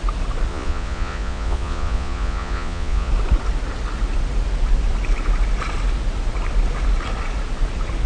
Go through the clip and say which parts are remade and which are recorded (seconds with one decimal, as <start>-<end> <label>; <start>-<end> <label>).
0.0-0.5 recorded; 0.5-3.1 remade; 3.1-8.1 recorded